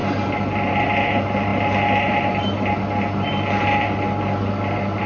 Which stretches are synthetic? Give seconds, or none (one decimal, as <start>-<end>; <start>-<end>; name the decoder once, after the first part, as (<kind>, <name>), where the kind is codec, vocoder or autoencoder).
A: none